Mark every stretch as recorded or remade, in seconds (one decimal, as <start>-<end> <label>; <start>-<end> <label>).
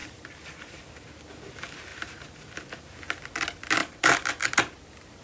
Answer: 0.0-0.8 remade; 0.8-1.9 recorded; 1.9-2.7 remade; 2.7-3.8 recorded; 3.8-4.3 remade; 4.3-5.2 recorded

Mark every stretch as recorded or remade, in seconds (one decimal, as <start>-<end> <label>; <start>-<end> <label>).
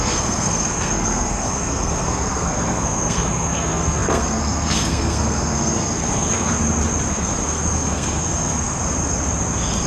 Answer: 0.0-6.5 remade; 6.5-7.1 recorded; 7.1-8.8 remade; 8.8-9.9 recorded